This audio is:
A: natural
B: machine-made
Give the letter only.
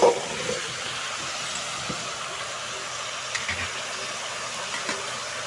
A